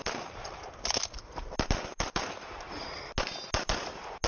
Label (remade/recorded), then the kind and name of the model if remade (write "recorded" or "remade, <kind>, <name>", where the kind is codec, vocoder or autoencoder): recorded